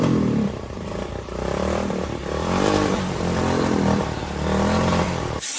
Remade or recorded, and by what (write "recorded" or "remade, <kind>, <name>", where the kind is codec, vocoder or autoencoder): remade, vocoder, BigVGAN v2